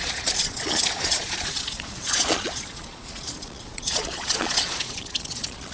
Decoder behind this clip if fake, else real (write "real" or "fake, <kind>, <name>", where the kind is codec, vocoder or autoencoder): fake, vocoder, Vocos